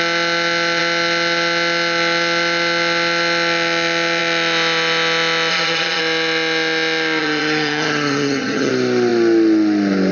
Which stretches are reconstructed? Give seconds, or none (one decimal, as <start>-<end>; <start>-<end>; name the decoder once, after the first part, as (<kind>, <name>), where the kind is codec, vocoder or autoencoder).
5.5-6.0 (vocoder, HiFi-GAN); 7.2-8.7